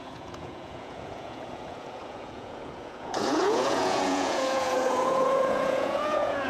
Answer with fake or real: fake